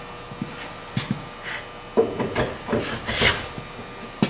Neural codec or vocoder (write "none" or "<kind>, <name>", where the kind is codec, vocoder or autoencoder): none